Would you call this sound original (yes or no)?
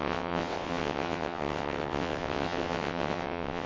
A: no